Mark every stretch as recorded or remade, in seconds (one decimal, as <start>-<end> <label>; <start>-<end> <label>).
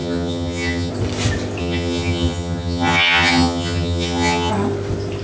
0.0-0.9 remade; 0.9-1.6 recorded; 1.6-4.5 remade; 4.5-5.2 recorded